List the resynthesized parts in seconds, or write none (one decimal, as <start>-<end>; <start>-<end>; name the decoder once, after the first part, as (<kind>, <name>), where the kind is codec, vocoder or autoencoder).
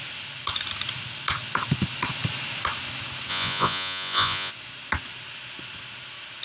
3.3-4.5 (vocoder, Vocos)